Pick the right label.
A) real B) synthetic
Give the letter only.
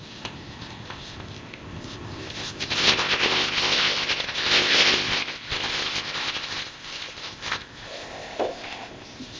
B